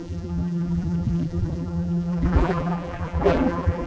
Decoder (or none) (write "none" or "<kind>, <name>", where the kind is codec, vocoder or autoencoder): vocoder, BigVGAN v2